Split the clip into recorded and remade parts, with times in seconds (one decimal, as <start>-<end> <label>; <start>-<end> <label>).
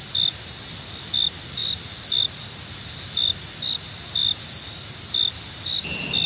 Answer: 0.0-6.3 recorded